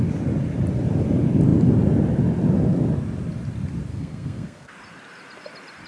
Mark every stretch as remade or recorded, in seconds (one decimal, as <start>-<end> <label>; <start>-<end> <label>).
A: 0.0-3.9 recorded; 3.9-4.7 remade; 4.7-5.9 recorded